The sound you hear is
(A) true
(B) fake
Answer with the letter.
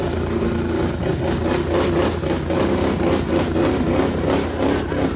A